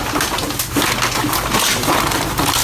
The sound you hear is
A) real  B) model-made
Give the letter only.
A